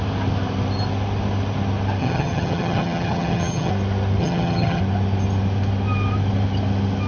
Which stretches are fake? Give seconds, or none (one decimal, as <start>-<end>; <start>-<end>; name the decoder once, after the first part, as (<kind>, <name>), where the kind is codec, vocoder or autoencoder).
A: 2.0-3.7 (vocoder, HiFi-GAN); 4.2-4.8